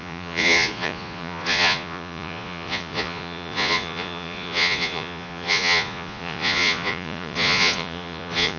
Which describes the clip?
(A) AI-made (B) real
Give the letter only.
A